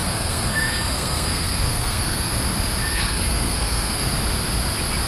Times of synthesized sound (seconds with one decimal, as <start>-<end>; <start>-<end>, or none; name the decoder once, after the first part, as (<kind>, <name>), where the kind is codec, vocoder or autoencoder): 0.0-2.3 (codec, SNAC); 2.9-4.1